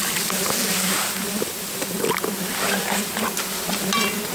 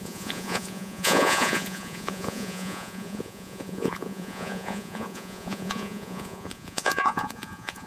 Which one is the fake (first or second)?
second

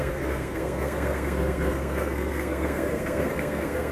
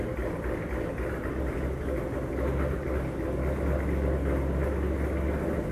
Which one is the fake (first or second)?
first